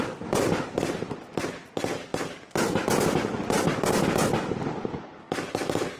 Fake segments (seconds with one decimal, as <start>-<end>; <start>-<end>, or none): none